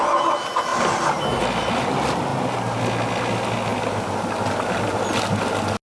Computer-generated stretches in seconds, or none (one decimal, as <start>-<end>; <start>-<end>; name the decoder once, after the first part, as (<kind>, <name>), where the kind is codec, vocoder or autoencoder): none